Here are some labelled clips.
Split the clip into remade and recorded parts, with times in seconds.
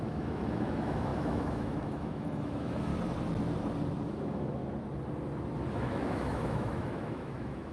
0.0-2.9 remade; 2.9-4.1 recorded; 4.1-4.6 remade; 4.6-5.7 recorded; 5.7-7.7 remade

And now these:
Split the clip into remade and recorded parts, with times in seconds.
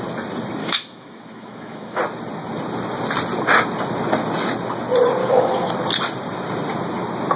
0.0-0.6 recorded; 0.6-2.0 remade; 2.0-5.2 recorded; 5.2-5.7 remade; 5.7-7.4 recorded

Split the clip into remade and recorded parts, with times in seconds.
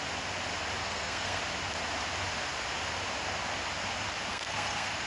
0.0-0.8 recorded; 0.8-1.4 remade; 1.4-4.3 recorded; 4.3-5.1 remade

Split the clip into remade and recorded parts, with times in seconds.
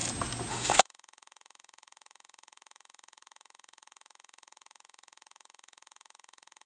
0.0-0.5 recorded; 0.5-6.7 remade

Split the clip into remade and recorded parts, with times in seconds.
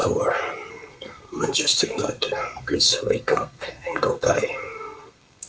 0.0-0.7 recorded; 0.7-5.5 remade